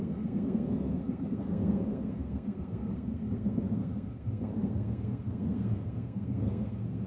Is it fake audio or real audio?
fake